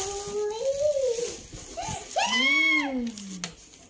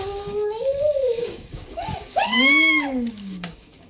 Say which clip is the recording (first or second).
first